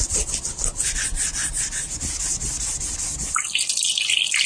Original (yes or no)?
yes